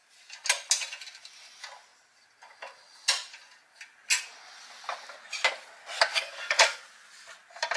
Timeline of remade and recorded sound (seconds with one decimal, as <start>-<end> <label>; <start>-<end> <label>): 0.0-6.1 recorded; 6.1-6.8 remade; 6.8-7.8 recorded